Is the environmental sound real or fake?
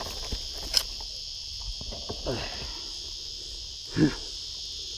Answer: real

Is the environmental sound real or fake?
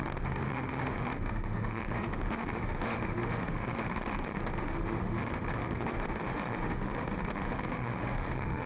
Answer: fake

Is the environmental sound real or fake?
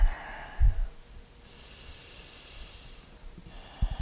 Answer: real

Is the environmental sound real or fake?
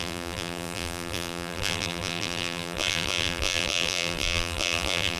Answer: fake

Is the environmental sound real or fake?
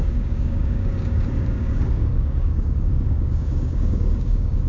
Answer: fake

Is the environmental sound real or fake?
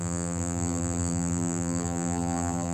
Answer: fake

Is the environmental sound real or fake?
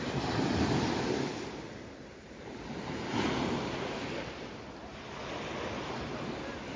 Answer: real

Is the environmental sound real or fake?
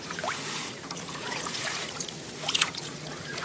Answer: fake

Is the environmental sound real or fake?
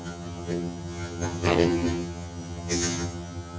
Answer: fake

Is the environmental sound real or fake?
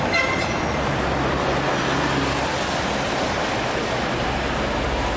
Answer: real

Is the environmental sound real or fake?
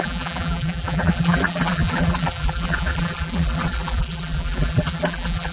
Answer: fake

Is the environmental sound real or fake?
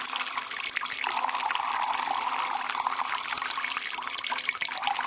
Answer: real